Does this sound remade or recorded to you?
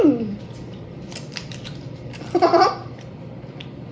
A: remade